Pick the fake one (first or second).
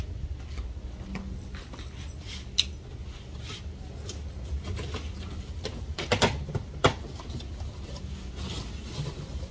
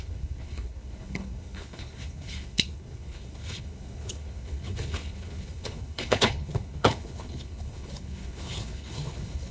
second